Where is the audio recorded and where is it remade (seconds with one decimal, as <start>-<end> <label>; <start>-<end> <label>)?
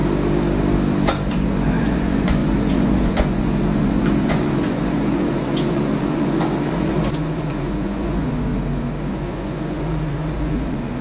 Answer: 0.0-1.3 recorded; 1.3-8.5 remade; 8.5-9.1 recorded; 9.1-11.0 remade